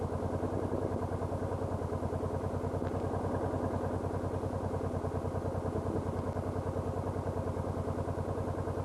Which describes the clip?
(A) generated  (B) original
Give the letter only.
B